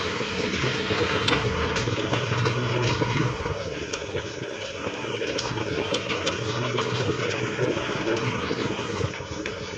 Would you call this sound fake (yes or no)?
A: yes